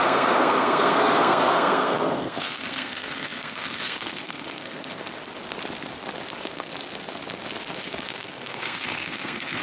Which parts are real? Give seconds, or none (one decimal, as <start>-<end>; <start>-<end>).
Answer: 5.1-6.3; 6.7-7.8